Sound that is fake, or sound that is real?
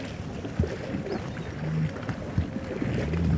real